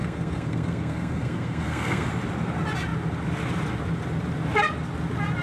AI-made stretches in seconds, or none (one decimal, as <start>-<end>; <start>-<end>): 0.0-2.1